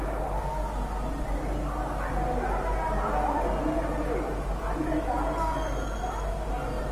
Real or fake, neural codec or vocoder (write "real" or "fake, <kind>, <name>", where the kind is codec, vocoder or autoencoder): real